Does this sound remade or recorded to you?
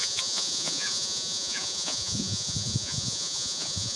remade